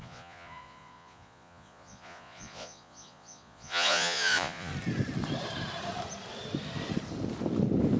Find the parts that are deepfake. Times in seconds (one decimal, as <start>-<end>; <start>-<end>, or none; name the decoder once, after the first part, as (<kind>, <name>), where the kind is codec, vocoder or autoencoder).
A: 0.0-4.7 (vocoder, Vocos)